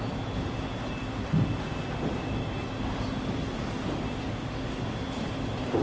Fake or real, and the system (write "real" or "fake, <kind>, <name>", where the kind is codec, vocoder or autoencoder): real